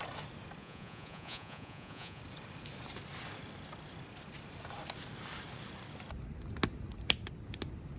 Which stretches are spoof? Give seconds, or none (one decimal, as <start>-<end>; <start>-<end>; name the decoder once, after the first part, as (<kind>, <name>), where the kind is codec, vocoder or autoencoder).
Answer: 0.6-2.2 (vocoder, Vocos)